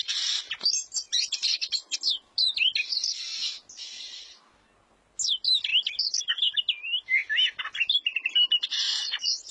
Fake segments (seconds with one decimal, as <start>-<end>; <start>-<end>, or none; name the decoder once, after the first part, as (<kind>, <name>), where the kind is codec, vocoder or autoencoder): none